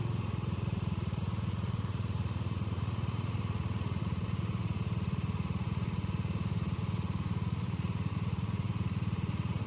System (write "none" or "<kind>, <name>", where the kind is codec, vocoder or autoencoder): vocoder, Vocos